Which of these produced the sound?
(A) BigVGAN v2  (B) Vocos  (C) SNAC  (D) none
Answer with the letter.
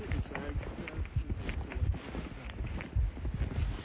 D